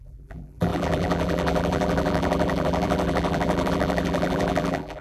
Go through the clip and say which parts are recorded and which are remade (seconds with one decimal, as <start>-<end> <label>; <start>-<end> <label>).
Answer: 0.0-5.0 remade